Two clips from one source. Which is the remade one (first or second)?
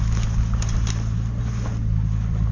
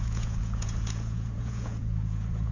second